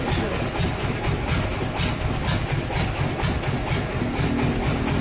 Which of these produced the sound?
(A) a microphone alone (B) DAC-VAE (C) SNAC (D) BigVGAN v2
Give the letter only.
A